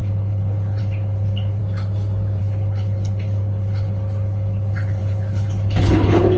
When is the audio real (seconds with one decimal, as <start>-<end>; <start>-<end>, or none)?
1.6-2.4